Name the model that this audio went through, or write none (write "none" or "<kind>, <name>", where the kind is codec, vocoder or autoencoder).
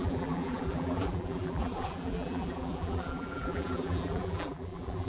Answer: vocoder, BigVGAN v2